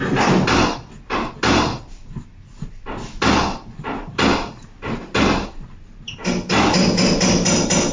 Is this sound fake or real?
real